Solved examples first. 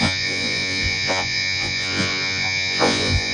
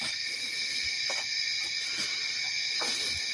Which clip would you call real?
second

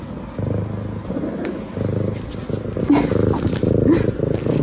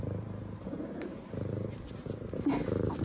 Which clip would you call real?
first